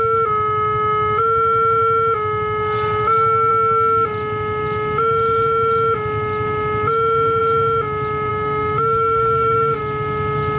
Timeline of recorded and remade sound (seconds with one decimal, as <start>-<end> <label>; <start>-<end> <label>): 0.0-8.3 recorded; 8.3-9.8 remade; 9.8-10.6 recorded